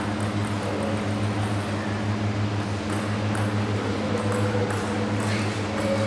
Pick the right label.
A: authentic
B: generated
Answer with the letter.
A